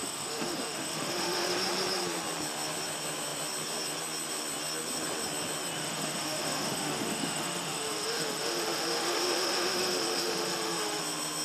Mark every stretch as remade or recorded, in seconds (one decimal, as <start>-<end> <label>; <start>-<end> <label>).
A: 0.0-1.5 remade; 1.5-5.8 recorded; 5.8-11.0 remade; 11.0-11.4 recorded